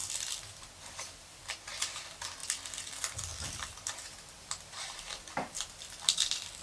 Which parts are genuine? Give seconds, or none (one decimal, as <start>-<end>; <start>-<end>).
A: 1.8-3.3